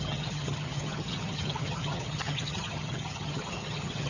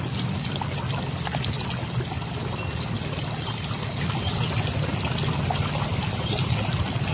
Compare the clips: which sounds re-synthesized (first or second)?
first